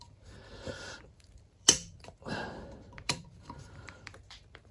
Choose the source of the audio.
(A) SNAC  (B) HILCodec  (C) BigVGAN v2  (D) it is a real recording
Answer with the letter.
C